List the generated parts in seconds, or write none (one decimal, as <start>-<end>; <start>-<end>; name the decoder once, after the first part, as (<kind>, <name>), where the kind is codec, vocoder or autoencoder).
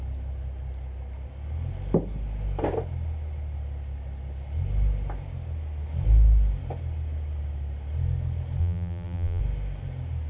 8.6-9.4 (vocoder, BigVGAN v2)